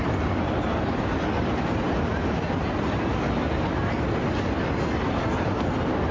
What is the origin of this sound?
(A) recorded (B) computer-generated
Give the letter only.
A